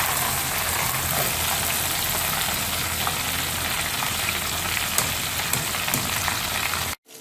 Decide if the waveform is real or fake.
real